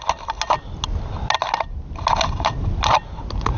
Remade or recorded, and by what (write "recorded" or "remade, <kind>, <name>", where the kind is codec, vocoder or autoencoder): recorded